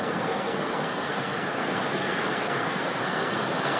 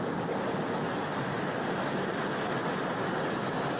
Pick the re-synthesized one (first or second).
first